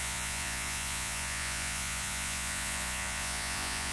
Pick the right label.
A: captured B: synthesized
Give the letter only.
B